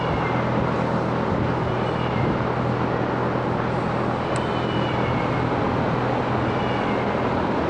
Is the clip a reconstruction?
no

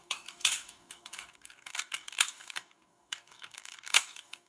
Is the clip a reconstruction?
yes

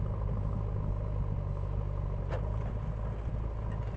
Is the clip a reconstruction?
no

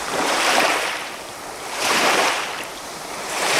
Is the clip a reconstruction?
yes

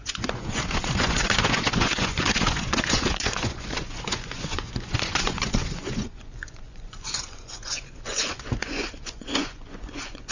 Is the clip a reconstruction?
yes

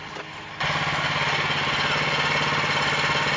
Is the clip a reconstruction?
no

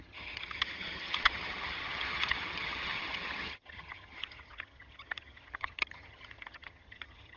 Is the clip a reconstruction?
yes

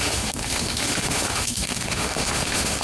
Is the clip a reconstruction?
yes